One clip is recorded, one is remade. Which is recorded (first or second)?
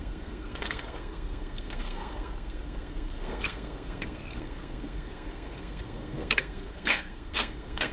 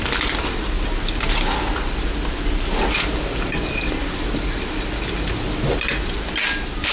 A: second